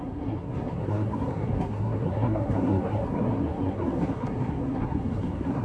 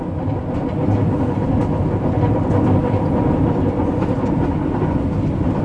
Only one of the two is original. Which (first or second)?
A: second